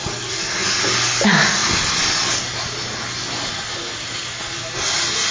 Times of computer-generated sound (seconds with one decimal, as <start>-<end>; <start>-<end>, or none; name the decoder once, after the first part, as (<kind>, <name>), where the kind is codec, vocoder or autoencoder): none